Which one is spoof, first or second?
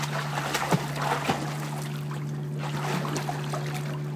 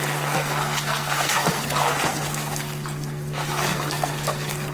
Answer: second